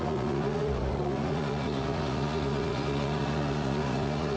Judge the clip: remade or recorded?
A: remade